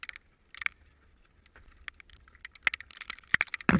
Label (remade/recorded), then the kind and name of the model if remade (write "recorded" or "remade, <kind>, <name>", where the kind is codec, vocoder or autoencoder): recorded